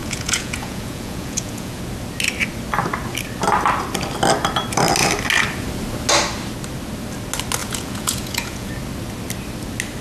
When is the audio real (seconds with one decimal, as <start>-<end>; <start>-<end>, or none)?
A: 1.8-7.6; 8.7-10.0